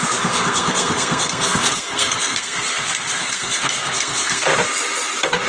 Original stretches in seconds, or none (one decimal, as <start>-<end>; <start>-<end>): 4.5-5.5